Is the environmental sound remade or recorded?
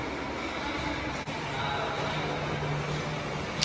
recorded